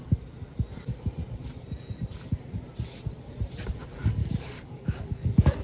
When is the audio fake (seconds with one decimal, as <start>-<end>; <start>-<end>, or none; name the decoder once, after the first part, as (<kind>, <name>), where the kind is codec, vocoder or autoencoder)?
4.2-5.6 (codec, DAC)